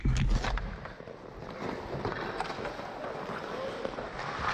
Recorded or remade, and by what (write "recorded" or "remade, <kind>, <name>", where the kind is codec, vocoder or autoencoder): recorded